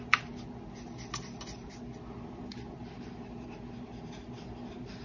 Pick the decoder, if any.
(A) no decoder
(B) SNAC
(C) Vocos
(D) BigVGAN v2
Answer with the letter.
A